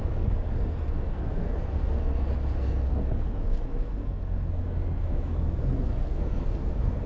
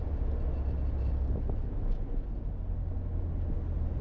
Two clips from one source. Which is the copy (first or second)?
first